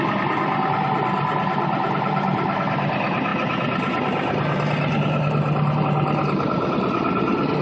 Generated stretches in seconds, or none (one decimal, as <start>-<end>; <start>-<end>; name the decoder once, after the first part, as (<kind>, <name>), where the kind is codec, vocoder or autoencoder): none